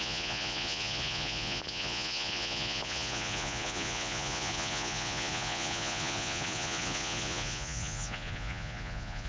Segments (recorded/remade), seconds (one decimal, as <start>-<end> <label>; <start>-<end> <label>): 0.0-9.3 remade